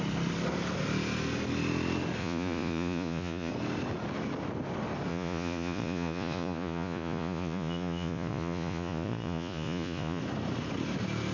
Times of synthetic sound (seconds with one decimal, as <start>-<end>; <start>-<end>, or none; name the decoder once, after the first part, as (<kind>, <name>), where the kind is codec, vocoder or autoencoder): 2.2-3.5 (vocoder, Vocos); 5.1-10.2